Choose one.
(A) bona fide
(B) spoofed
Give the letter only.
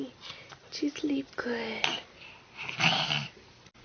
A